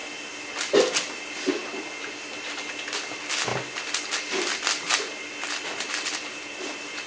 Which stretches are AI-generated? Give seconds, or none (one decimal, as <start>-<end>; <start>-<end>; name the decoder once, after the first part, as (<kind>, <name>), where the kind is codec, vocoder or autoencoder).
none